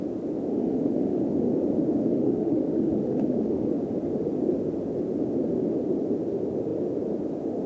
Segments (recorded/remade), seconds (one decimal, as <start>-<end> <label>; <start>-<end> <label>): 0.0-0.5 recorded; 0.5-1.2 remade; 1.2-2.0 recorded; 2.0-3.7 remade; 3.7-7.7 recorded